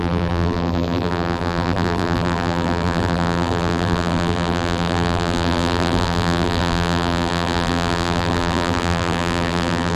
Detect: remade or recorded remade